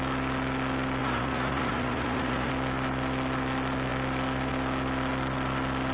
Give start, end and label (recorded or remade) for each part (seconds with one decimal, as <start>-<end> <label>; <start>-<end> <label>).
0.0-1.0 recorded; 1.0-2.5 remade; 2.5-5.9 recorded